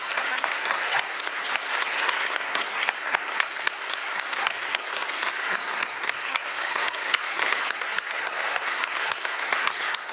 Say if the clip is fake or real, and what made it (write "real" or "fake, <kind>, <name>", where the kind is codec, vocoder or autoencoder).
fake, codec, SNAC